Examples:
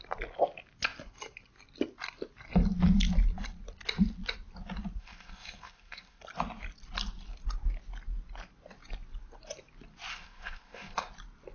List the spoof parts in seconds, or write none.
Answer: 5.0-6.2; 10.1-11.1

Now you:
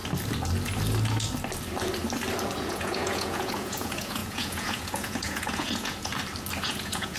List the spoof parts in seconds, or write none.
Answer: 2.6-6.1; 6.6-7.2